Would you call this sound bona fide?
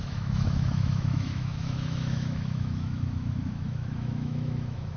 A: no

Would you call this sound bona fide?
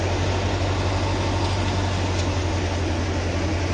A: yes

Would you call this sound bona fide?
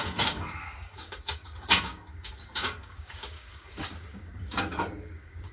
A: no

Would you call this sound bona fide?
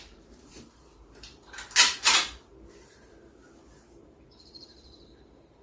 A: no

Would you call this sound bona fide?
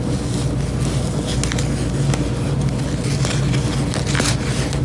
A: yes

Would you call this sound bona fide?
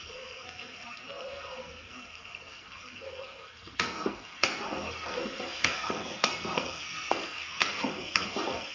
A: no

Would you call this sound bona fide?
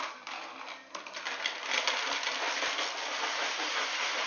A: yes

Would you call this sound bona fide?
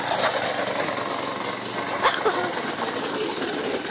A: yes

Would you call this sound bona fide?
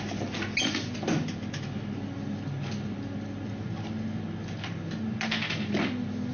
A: yes